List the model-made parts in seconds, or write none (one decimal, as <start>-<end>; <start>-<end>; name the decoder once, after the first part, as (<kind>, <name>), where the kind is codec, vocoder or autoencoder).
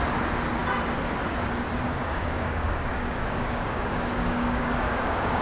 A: 1.9-5.4 (codec, DAC)